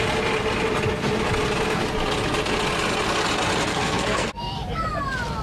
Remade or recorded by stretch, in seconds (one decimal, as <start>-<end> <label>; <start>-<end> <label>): 0.0-3.7 recorded; 3.7-4.3 remade; 4.3-5.4 recorded

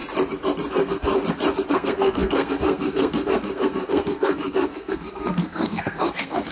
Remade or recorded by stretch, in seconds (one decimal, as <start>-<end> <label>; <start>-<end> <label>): 0.0-0.7 recorded; 0.7-1.1 remade; 1.1-1.7 recorded; 1.7-6.5 remade

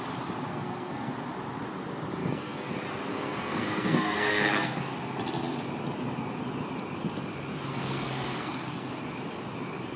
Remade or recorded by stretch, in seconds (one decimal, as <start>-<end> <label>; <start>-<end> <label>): 0.0-0.5 recorded; 0.5-1.1 remade; 1.1-2.2 recorded; 2.2-2.7 remade; 2.7-3.1 recorded; 3.1-4.9 remade; 4.9-7.7 recorded; 7.7-8.9 remade; 8.9-10.0 recorded

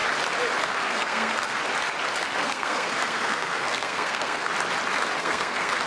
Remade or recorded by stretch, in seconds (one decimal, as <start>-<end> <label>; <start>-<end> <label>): 0.0-0.6 recorded; 0.6-1.6 remade; 1.6-2.4 recorded; 2.4-4.5 remade; 4.5-5.2 recorded; 5.2-5.9 remade

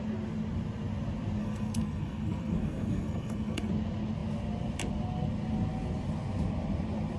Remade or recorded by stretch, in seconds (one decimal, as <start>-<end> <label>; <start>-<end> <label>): 0.0-1.4 recorded; 1.4-3.7 remade; 3.7-7.2 recorded